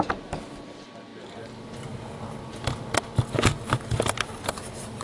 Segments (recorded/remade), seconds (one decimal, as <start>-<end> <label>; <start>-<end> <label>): 0.0-1.1 remade; 1.1-4.1 recorded; 4.1-5.0 remade